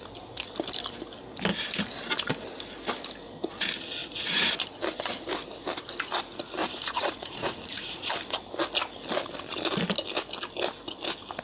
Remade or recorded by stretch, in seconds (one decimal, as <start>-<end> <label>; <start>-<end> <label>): 0.0-4.0 recorded; 4.0-4.5 remade; 4.5-6.6 recorded; 6.6-8.1 remade; 8.1-11.4 recorded